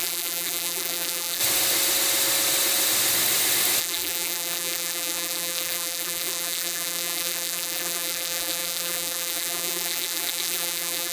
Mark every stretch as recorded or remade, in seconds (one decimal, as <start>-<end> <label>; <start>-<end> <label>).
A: 0.0-1.4 remade; 1.4-3.8 recorded; 3.8-11.1 remade